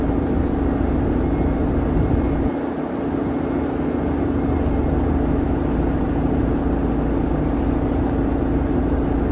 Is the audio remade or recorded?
recorded